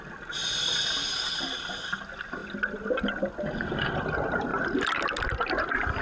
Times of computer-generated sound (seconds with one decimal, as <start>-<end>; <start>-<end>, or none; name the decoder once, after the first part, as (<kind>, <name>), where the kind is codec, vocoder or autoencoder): none

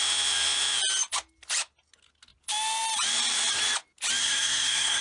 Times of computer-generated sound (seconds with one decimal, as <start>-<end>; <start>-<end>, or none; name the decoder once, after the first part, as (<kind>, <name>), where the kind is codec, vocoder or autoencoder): 4.2-5.0 (codec, SNAC)